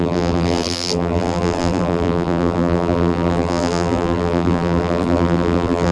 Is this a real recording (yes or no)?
no